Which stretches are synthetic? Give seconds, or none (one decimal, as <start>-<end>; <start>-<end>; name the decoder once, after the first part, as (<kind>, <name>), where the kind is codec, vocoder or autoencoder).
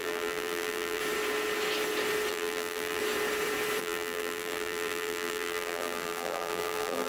0.0-1.0 (vocoder, BigVGAN v2); 2.3-3.0; 3.8-7.1